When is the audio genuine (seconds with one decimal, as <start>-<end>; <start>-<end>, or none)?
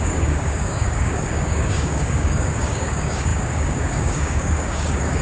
none